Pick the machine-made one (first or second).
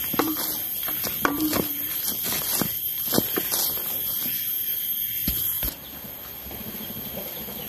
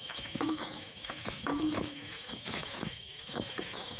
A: second